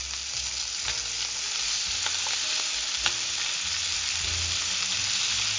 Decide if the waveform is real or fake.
real